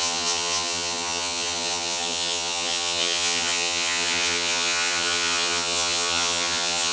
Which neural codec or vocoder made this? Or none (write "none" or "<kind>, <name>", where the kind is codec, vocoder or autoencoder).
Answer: vocoder, HiFi-GAN